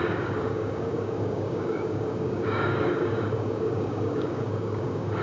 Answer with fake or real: fake